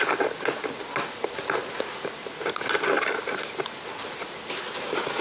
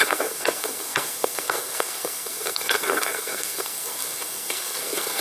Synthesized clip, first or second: second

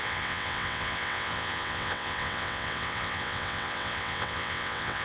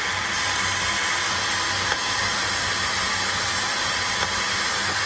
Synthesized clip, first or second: first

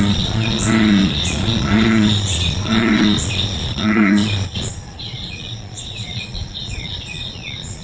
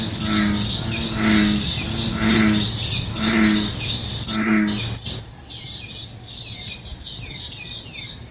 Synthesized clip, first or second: first